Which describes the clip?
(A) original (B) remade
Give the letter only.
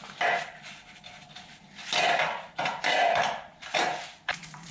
A